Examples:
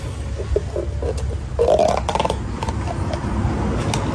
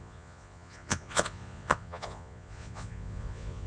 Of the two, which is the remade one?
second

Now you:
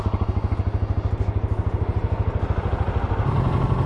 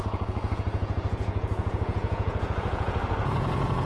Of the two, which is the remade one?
second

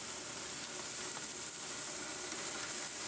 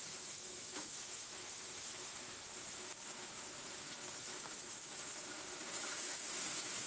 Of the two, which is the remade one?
second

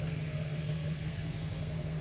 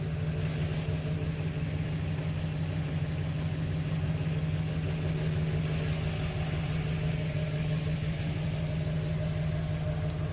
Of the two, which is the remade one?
first